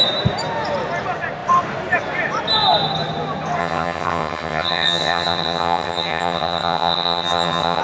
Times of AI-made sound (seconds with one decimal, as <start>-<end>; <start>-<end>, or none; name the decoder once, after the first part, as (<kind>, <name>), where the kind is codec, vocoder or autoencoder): 3.6-7.8 (vocoder, HiFi-GAN)